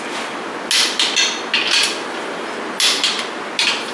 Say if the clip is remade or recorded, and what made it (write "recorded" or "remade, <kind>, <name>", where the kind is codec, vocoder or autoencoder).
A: recorded